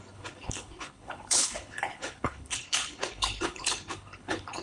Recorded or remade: remade